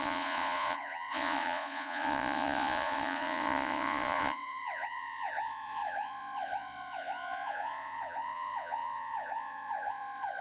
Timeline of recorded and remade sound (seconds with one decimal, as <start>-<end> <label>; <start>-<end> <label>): 0.0-10.4 remade

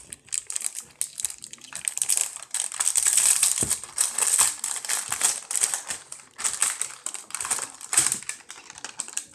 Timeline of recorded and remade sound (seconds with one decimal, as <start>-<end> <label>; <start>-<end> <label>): 0.0-2.2 recorded; 2.2-5.7 remade; 5.7-6.6 recorded; 6.6-8.2 remade; 8.2-9.3 recorded

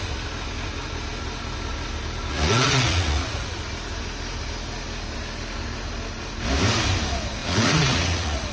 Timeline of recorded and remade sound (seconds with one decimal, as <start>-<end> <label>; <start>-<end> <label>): 0.0-2.3 recorded; 2.3-3.5 remade; 3.5-7.4 recorded; 7.4-8.5 remade

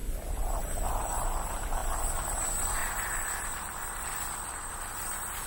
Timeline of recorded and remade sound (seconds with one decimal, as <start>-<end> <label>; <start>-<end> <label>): 0.0-0.6 recorded; 0.6-1.8 remade; 1.8-2.4 recorded; 2.4-2.8 remade; 2.8-4.7 recorded; 4.7-5.5 remade